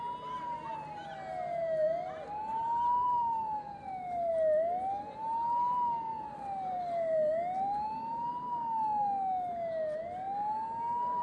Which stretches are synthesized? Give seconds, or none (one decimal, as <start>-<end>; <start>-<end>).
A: 2.5-4.3; 6.1-8.3